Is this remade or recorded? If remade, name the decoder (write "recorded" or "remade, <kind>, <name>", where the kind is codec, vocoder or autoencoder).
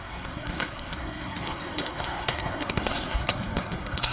remade, codec, SNAC